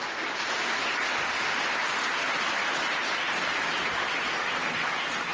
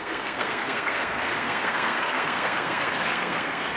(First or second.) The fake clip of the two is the second